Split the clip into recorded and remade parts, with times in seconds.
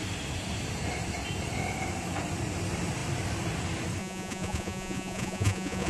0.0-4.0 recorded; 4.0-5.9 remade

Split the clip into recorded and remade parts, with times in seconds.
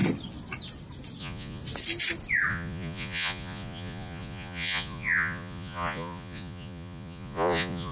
0.0-1.2 recorded; 1.2-1.6 remade; 1.6-2.5 recorded; 2.5-7.9 remade